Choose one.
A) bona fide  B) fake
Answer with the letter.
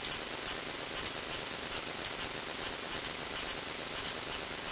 A